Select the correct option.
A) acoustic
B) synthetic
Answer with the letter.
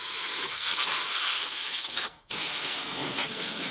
B